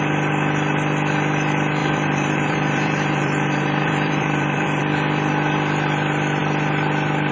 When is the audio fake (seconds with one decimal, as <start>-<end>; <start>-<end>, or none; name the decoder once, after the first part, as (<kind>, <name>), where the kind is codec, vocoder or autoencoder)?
1.8-4.8 (vocoder, BigVGAN v2)